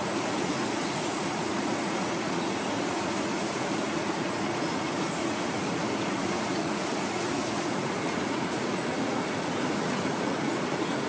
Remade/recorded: remade